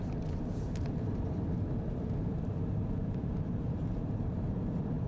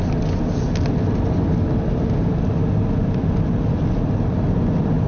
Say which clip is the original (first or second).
second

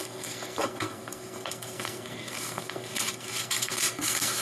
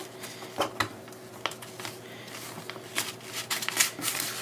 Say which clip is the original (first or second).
second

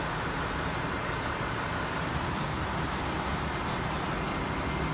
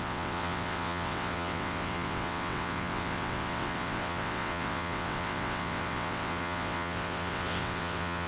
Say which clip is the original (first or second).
first